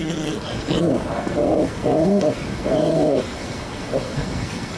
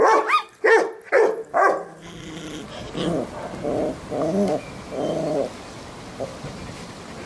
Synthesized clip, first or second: first